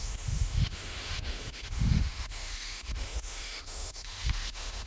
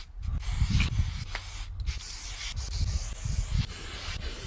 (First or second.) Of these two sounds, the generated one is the first